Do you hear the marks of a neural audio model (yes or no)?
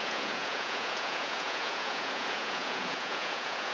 yes